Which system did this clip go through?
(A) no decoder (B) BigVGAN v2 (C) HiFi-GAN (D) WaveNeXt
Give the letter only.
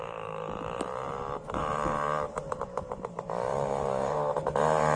B